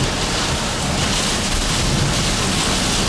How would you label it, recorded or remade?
recorded